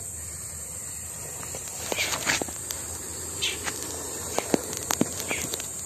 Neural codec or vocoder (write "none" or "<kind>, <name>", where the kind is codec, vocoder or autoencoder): none